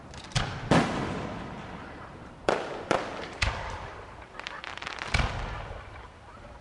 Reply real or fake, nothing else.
fake